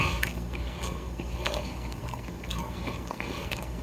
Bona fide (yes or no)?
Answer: no